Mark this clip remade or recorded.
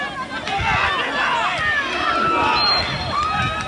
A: recorded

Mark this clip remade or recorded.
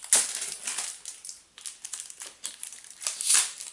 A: recorded